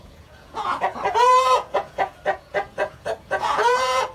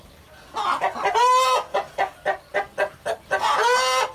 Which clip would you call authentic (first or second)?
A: second